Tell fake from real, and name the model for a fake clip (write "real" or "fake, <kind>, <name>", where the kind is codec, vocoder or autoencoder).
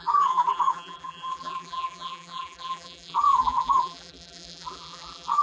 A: fake, vocoder, BigVGAN v2